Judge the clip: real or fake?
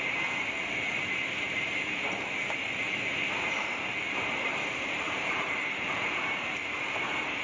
fake